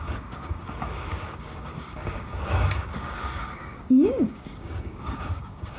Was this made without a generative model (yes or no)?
no